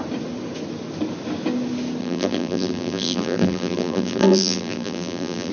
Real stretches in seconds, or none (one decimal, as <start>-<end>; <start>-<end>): 0.0-2.0